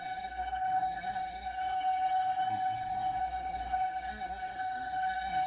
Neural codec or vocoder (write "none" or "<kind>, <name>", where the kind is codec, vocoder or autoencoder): codec, SNAC